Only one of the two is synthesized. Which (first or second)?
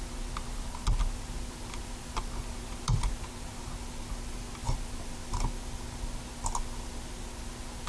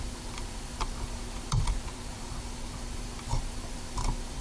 second